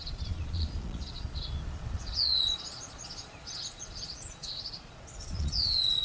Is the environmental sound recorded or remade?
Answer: remade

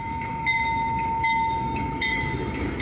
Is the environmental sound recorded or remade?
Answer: remade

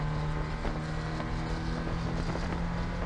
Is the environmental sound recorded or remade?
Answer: recorded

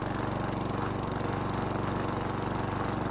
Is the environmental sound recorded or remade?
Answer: recorded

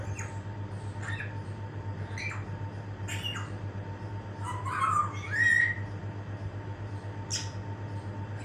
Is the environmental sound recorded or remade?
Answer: recorded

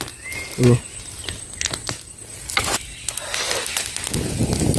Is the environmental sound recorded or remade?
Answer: recorded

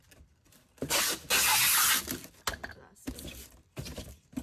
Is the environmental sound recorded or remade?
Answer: recorded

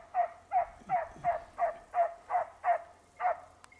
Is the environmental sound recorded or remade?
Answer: recorded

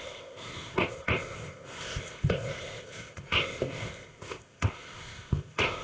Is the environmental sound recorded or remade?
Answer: remade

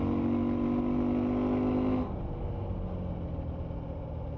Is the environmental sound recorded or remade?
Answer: recorded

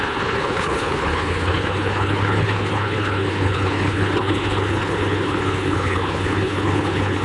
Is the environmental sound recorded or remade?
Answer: remade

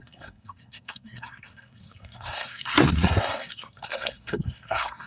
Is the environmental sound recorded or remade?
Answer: remade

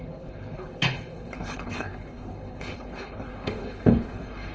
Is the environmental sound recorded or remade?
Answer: remade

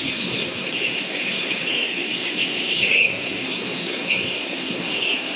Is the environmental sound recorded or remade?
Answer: remade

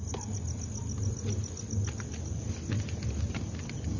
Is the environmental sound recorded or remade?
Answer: recorded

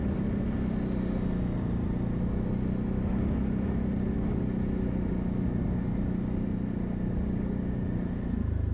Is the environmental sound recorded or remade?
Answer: recorded